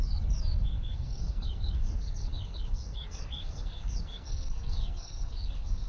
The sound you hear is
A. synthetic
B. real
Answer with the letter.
A